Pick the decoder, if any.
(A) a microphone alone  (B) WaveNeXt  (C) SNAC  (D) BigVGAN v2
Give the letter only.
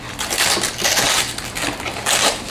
A